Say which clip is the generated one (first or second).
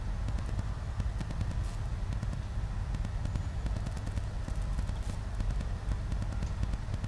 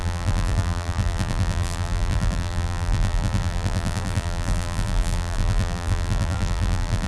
second